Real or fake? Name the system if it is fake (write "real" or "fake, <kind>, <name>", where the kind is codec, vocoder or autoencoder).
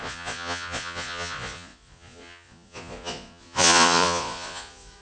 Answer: fake, vocoder, Vocos